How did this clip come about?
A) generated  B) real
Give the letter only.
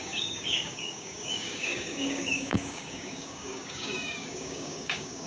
A